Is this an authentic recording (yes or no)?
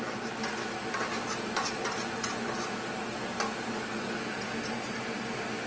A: yes